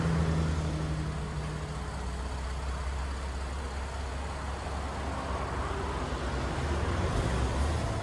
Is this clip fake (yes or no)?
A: no